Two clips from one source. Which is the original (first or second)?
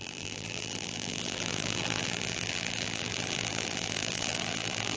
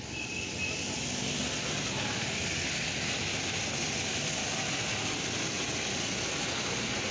second